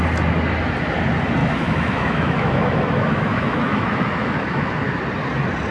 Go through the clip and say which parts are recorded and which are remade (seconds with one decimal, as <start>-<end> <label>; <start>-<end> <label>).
0.0-1.4 recorded; 1.4-4.8 remade; 4.8-5.7 recorded